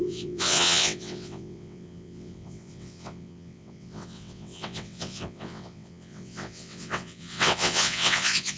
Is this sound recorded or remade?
remade